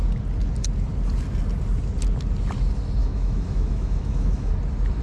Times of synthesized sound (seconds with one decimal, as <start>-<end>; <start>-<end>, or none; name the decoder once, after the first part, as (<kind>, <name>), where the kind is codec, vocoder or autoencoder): 3.0-4.5 (autoencoder, DAC-VAE)